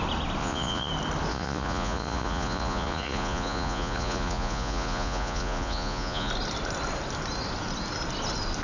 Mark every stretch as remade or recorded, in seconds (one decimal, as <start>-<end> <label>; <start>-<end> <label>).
0.0-0.4 recorded; 0.4-0.9 remade; 0.9-1.3 recorded; 1.3-6.3 remade; 6.3-8.6 recorded